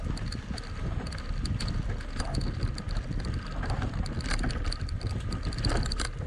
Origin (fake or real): real